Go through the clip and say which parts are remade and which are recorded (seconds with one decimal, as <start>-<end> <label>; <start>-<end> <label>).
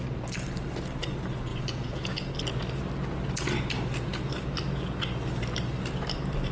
0.0-1.5 recorded; 1.5-2.3 remade; 2.3-6.5 recorded